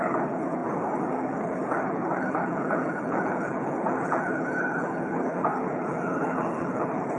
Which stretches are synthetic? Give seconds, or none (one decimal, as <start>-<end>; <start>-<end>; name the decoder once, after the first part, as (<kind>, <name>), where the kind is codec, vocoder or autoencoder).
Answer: 0.0-7.2 (codec, HILCodec)